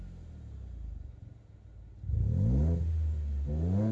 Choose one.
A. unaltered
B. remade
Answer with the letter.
A